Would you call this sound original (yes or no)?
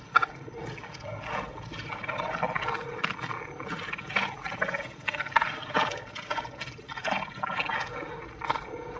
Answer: yes